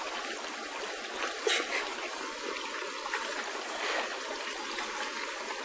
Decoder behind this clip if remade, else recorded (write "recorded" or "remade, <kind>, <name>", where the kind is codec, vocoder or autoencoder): recorded